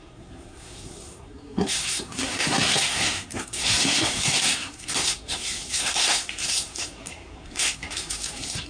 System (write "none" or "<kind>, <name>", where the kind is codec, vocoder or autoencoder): codec, SNAC